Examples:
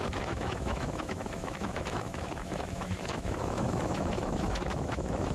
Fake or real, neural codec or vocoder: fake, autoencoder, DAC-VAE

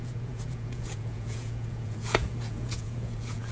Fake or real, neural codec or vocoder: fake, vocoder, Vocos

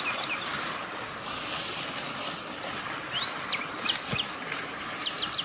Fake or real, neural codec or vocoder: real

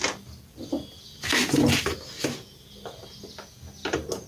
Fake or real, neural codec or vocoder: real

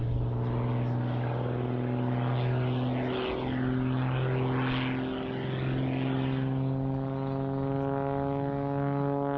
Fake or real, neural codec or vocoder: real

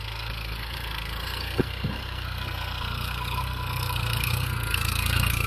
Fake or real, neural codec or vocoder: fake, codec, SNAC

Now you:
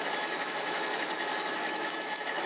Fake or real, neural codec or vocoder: fake, autoencoder, DAC-VAE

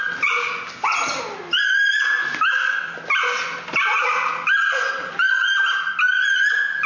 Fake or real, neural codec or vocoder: real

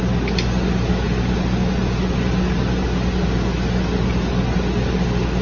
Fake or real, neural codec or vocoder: real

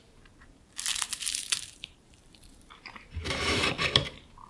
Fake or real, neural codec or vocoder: fake, vocoder, BigVGAN v2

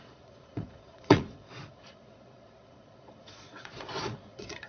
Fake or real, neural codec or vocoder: fake, vocoder, Vocos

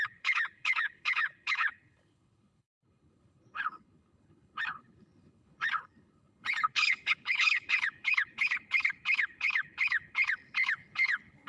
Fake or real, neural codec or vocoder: fake, codec, HILCodec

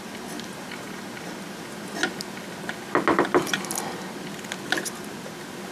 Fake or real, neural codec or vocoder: real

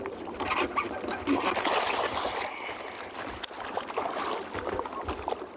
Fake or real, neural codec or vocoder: real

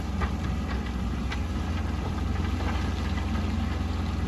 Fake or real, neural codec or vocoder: real